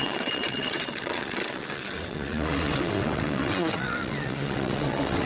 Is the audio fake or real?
fake